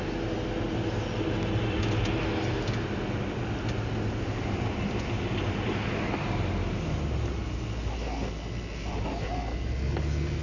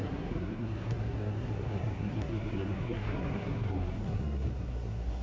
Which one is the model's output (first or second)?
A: second